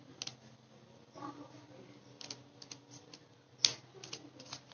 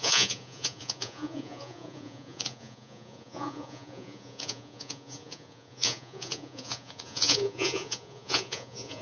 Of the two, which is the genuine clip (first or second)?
first